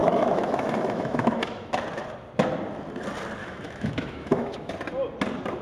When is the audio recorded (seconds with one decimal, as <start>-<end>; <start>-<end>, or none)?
1.7-3.4; 4.7-5.6